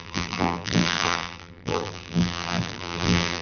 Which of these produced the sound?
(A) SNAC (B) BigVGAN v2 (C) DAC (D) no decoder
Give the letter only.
B